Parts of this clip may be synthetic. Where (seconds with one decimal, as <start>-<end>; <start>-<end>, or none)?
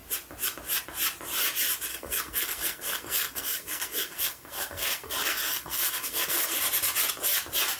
1.9-6.6